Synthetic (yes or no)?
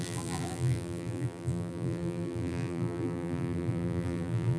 yes